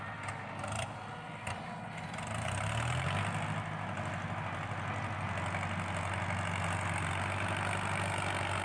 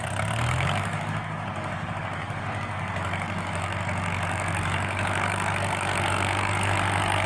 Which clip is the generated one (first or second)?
second